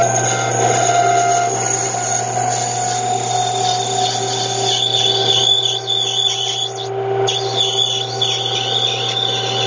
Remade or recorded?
recorded